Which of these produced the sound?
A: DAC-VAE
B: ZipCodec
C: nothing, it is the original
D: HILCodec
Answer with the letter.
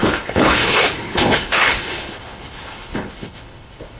D